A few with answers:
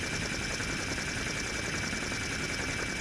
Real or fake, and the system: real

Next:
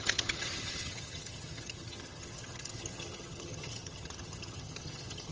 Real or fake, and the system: fake, vocoder, HiFi-GAN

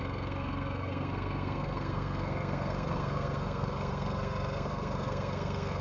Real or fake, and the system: fake, codec, SNAC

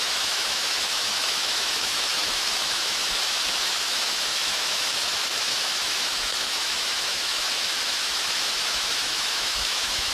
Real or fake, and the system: fake, autoencoder, DAC-VAE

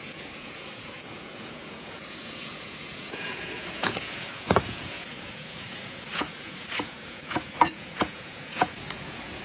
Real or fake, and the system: fake, vocoder, Vocos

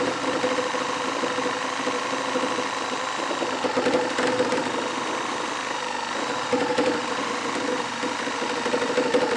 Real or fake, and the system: fake, vocoder, BigVGAN v2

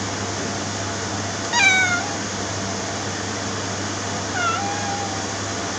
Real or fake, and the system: real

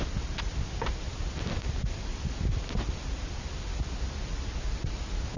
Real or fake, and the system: real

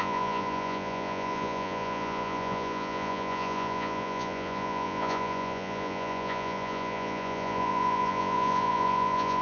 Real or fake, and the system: fake, vocoder, Vocos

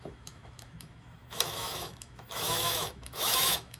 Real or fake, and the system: fake, autoencoder, DAC-VAE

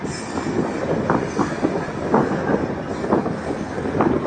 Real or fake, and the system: real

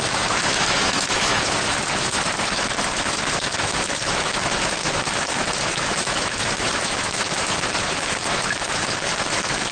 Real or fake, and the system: fake, autoencoder, DAC-VAE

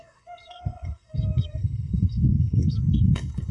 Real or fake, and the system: fake, codec, SNAC